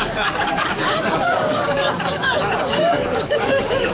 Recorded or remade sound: remade